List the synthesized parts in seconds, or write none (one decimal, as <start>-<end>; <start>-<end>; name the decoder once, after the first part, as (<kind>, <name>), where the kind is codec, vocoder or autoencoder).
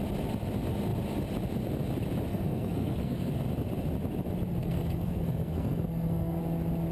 2.3-3.3 (codec, SNAC); 4.6-6.4